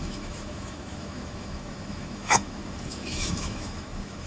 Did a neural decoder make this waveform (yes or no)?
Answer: yes